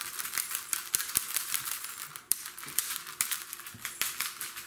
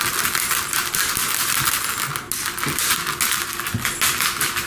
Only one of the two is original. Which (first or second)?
second